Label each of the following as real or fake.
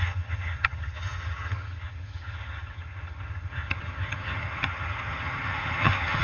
fake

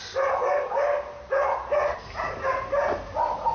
real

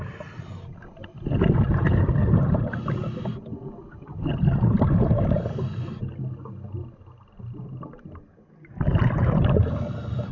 real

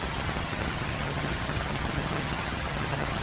fake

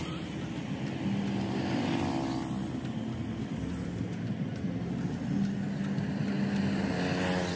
real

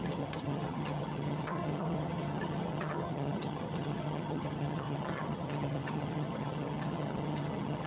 fake